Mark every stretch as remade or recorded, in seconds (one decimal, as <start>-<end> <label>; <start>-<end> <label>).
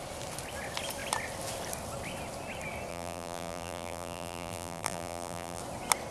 0.0-2.9 recorded; 2.9-5.6 remade; 5.6-6.1 recorded